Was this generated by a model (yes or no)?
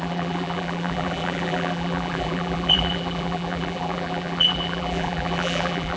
yes